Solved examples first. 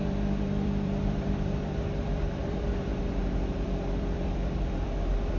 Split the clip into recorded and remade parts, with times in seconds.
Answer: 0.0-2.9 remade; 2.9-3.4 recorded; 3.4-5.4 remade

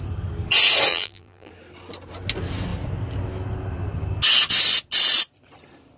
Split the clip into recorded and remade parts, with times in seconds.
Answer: 0.0-0.9 recorded; 0.9-1.5 remade; 1.5-6.0 recorded